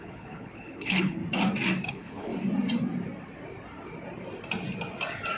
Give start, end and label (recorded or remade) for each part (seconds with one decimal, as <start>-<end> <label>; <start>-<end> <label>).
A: 0.0-1.2 remade; 1.2-1.9 recorded; 1.9-2.3 remade; 2.3-5.4 recorded